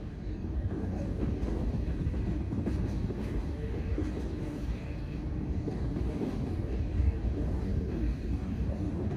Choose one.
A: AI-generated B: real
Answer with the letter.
A